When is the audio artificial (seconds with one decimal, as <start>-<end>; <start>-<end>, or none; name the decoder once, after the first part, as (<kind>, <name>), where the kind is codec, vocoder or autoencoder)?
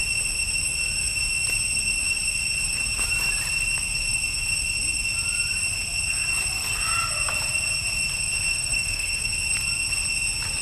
8.5-9.3 (codec, SNAC)